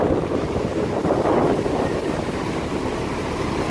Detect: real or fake real